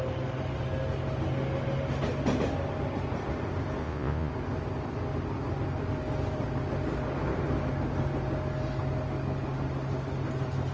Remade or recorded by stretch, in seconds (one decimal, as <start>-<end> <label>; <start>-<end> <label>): 0.0-3.8 recorded; 3.8-4.3 remade; 4.3-10.7 recorded